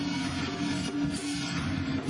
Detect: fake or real real